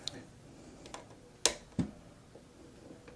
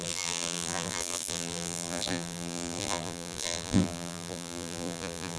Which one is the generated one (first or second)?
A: second